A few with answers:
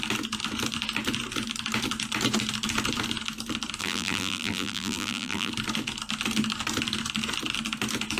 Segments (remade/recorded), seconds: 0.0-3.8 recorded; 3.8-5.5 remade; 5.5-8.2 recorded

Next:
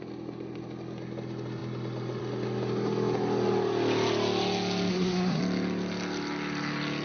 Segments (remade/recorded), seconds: 0.0-4.9 recorded; 4.9-5.4 remade; 5.4-7.0 recorded

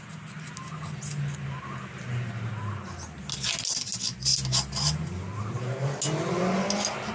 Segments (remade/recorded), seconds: 0.0-7.1 recorded